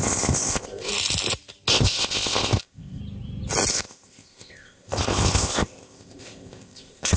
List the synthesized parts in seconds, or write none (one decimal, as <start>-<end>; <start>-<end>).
0.0-0.9; 1.7-3.0; 3.7-7.2